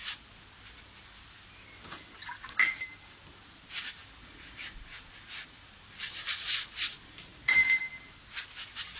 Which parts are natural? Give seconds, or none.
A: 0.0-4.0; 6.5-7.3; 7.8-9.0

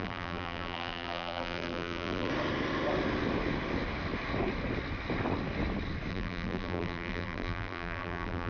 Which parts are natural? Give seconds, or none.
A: 2.3-6.1

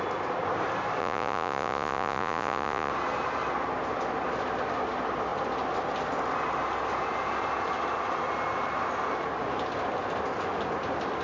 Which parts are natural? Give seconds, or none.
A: 0.0-1.0; 2.9-11.2

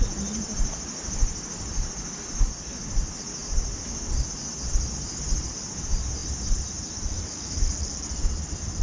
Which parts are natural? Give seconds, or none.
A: 0.0-3.4; 4.2-6.2; 6.7-8.8

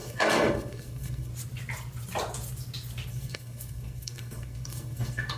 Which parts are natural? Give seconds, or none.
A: 1.3-3.1

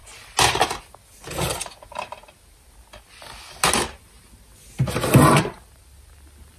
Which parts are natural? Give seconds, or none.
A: 0.0-6.6

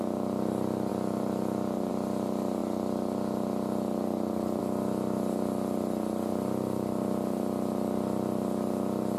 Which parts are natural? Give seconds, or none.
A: 0.0-0.9; 1.9-9.2